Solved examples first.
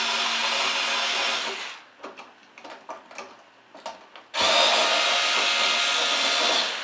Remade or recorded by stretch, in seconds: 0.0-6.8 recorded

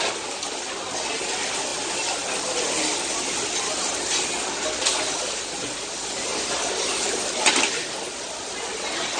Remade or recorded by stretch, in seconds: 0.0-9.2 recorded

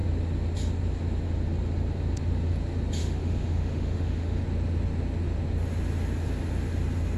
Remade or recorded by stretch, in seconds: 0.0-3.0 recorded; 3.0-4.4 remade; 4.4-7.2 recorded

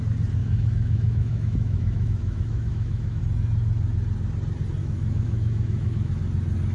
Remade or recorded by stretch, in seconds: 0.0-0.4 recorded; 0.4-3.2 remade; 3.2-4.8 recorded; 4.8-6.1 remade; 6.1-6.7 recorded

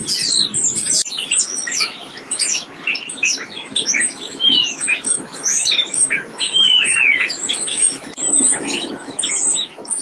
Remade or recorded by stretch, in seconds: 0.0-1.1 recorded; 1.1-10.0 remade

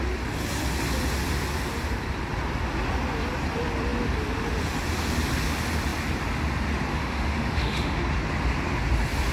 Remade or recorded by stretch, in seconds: 0.0-6.9 recorded; 6.9-8.0 remade; 8.0-9.3 recorded